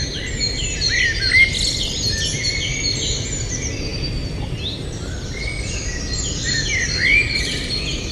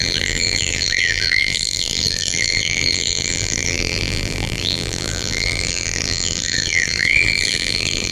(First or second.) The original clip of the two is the first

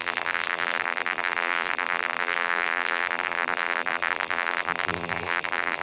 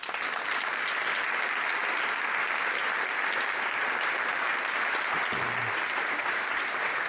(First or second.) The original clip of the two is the second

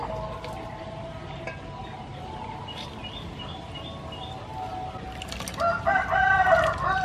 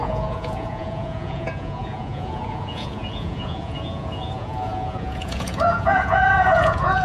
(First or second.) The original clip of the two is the first